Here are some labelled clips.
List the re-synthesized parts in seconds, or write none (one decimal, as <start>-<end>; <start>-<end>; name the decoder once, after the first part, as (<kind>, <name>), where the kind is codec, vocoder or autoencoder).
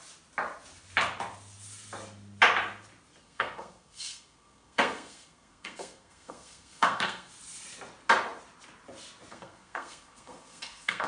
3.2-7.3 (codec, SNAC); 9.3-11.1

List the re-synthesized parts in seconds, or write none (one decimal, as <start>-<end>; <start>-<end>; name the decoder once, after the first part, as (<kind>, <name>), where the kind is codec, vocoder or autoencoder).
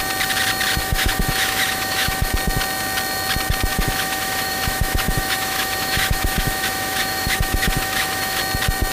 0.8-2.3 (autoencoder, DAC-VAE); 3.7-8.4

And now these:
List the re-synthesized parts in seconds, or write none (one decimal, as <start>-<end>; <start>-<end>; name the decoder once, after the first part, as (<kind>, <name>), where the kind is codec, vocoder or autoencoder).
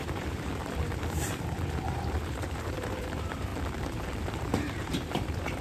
0.0-3.5 (vocoder, BigVGAN v2); 4.2-5.6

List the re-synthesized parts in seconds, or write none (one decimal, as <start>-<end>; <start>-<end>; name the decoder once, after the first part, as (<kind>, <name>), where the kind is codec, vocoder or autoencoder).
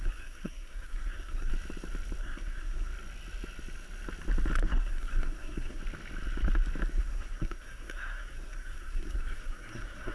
0.0-1.5 (codec, SNAC); 2.2-2.9; 4.6-5.8; 7.0-10.1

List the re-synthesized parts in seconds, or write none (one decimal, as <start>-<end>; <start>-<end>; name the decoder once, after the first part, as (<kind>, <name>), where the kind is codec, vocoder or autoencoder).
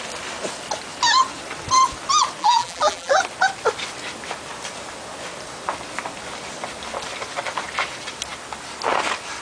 2.4-3.2 (vocoder, BigVGAN v2)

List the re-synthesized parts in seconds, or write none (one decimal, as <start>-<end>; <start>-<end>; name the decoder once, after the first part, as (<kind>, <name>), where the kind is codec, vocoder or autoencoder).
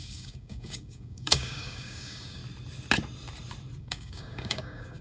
0.0-2.4 (codec, DAC); 3.8-5.0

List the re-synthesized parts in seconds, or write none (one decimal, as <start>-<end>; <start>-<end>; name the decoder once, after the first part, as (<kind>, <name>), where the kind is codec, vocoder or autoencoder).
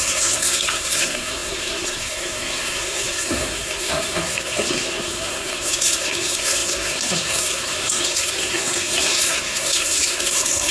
0.0-10.7 (codec, SNAC)